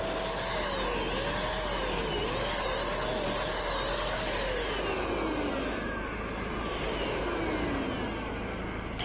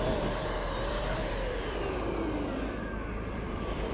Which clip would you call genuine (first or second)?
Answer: first